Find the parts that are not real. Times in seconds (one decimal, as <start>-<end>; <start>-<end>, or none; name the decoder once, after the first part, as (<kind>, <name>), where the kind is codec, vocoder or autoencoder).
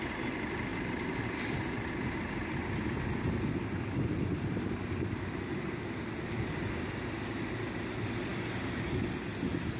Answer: none